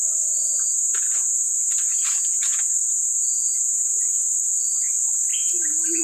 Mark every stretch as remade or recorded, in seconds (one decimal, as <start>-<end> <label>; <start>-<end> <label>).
0.0-0.4 recorded; 0.4-4.0 remade; 4.0-5.3 recorded; 5.3-6.0 remade